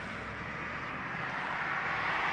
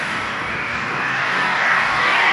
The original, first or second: first